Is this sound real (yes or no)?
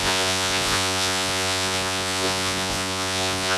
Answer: no